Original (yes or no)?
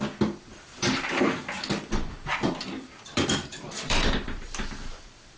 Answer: no